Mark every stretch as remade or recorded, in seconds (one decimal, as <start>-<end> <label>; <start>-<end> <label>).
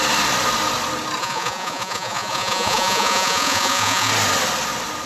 0.0-1.2 recorded; 1.2-4.1 remade; 4.1-5.1 recorded